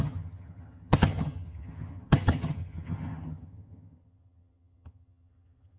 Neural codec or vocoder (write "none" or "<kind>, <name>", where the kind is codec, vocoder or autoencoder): vocoder, HiFi-GAN